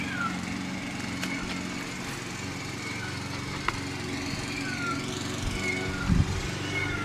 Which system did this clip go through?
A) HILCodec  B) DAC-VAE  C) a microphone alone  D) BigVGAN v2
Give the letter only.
C